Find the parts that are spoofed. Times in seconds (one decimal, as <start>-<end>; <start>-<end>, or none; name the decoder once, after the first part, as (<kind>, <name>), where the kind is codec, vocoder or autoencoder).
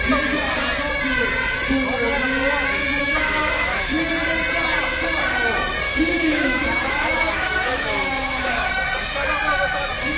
3.0-4.1 (autoencoder, DAC-VAE); 5.9-8.7